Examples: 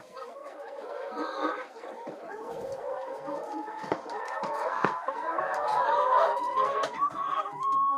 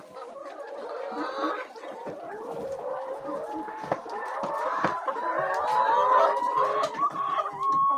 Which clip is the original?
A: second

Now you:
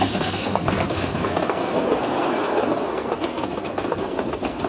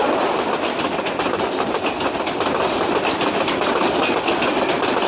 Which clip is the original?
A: second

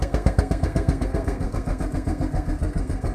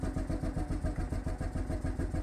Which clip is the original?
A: second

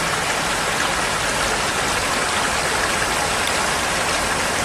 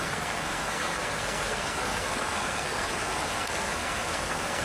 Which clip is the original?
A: first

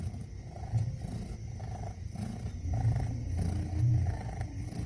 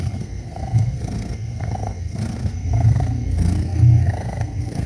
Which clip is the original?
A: first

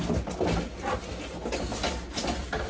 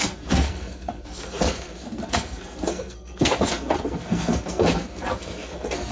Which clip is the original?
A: first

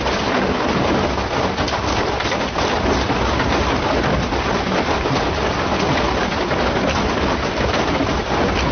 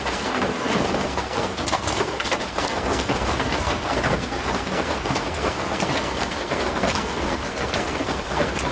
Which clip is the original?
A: first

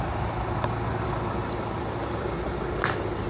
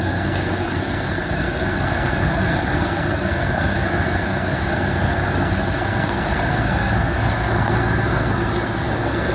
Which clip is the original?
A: first